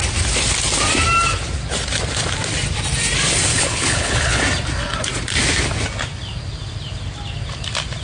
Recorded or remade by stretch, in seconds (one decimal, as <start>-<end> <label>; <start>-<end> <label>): 0.0-3.5 recorded; 3.5-4.4 remade; 4.4-8.0 recorded